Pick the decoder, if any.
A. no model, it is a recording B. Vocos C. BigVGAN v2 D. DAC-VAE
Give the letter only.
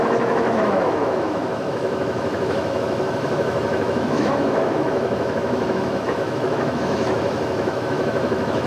D